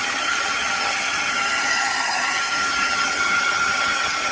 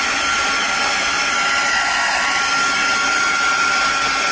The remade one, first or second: first